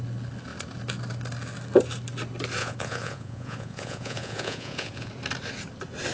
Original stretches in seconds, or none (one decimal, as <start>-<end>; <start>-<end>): 0.0-2.6; 5.1-6.1